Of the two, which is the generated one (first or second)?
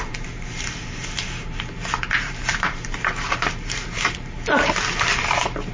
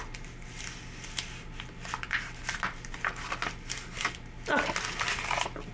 first